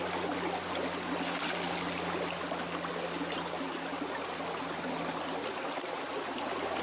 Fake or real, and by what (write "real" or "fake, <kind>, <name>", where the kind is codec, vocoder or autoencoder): real